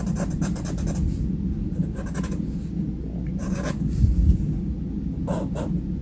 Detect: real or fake real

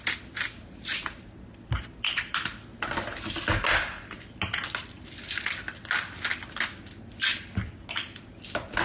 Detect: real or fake real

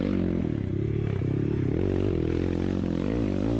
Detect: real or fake real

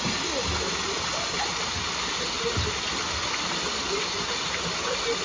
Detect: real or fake real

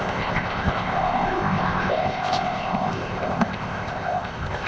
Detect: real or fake fake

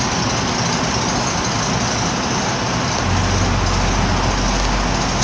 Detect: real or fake real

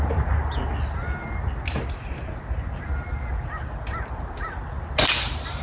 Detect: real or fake real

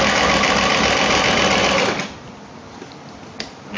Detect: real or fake real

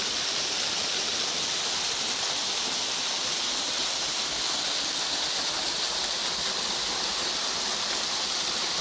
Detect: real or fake real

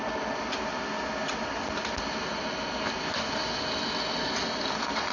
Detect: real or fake real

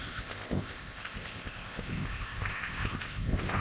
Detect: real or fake fake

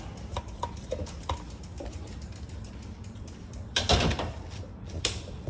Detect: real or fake real